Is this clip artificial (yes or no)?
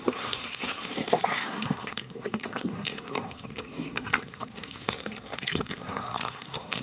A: yes